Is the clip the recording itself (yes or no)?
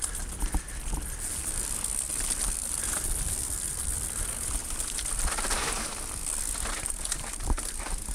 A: yes